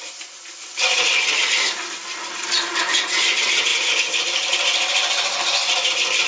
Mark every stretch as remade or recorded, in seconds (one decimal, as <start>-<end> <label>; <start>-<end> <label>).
0.0-6.3 recorded